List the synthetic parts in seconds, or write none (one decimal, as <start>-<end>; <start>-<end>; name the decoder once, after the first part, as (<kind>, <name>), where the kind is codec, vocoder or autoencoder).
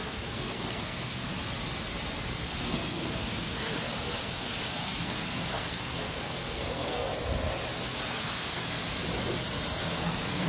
0.0-1.3 (codec, SNAC); 2.4-7.1; 8.1-8.8; 9.8-10.5